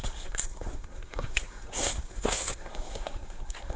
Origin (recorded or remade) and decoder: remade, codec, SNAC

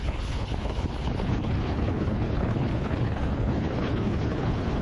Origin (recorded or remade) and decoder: remade, codec, HILCodec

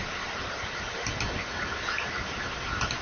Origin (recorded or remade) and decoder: recorded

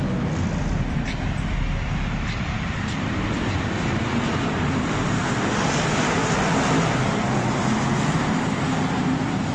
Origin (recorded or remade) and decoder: recorded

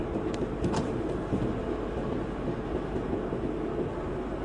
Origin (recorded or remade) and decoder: recorded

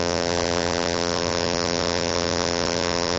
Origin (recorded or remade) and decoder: remade, vocoder, BigVGAN v2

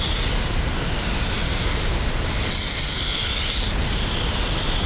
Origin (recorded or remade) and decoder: recorded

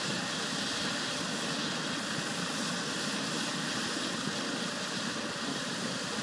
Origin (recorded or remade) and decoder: recorded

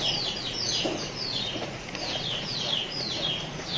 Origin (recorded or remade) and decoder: remade, vocoder, Vocos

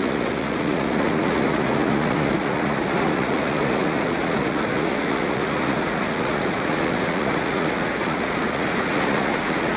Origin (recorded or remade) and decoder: remade, vocoder, Vocos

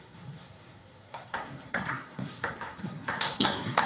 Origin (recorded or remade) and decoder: remade, codec, SNAC